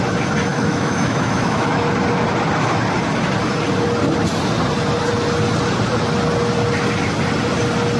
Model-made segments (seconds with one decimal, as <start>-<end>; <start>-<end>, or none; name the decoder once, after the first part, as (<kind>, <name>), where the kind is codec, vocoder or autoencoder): 0.5-1.8 (autoencoder, DAC-VAE)